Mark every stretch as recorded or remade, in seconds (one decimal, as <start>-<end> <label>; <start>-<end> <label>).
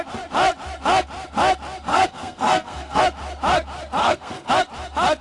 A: 0.0-1.9 recorded; 1.9-3.0 remade; 3.0-4.0 recorded; 4.0-4.5 remade; 4.5-5.2 recorded